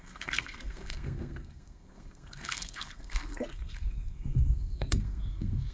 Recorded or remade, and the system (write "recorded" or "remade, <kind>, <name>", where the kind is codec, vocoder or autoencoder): remade, codec, SNAC